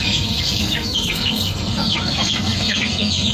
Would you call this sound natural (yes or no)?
no